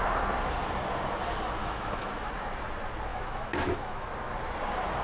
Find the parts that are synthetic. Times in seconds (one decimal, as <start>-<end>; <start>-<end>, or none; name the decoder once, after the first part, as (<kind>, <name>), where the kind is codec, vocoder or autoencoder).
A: 1.6-2.3 (autoencoder, DAC-VAE); 3.1-4.1